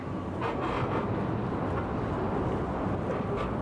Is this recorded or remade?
recorded